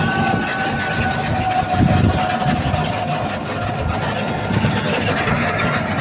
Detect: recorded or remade recorded